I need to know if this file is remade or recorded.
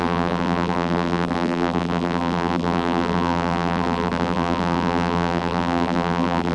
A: remade